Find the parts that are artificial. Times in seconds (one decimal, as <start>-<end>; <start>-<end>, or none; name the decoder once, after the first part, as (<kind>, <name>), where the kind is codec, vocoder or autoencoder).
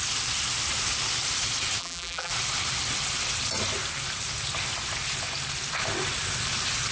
1.8-2.3 (vocoder, BigVGAN v2)